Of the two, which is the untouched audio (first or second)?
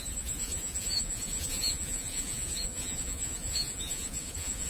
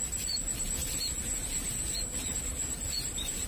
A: second